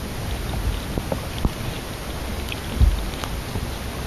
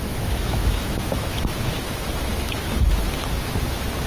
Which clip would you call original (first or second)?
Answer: first